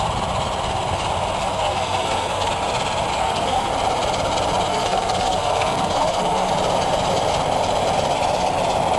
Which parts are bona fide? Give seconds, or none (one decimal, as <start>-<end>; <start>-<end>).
0.0-1.4; 2.5-3.1; 3.7-4.7; 6.5-9.0